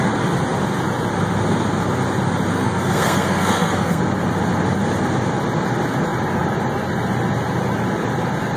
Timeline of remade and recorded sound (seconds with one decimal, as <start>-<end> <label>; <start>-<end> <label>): 0.0-2.5 recorded; 2.5-4.0 remade; 4.0-8.6 recorded